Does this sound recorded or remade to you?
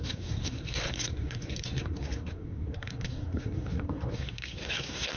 remade